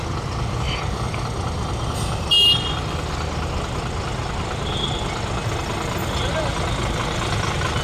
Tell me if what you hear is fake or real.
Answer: real